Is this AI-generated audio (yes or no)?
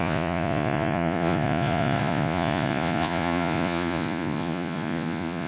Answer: yes